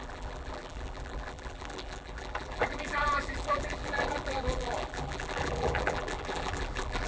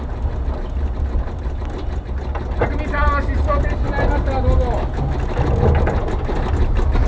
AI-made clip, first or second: first